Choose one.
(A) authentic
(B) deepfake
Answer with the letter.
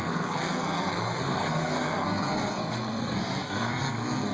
B